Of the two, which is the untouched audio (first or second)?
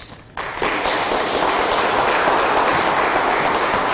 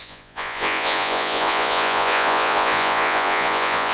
first